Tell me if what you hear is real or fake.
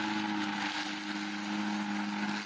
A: real